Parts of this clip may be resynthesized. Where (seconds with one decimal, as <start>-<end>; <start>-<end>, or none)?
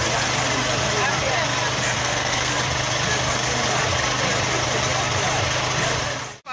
1.9-2.5